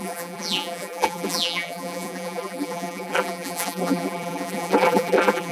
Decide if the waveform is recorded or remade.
remade